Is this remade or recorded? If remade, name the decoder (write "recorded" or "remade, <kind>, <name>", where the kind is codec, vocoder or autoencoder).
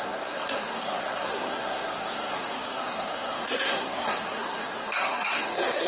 remade, codec, SNAC